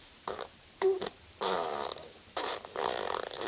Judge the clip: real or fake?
fake